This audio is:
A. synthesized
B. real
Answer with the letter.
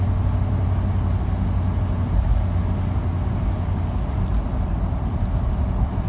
B